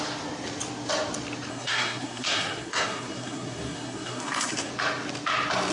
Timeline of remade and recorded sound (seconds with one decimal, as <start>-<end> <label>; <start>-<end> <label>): 0.0-1.5 recorded; 1.5-4.7 remade; 4.7-5.7 recorded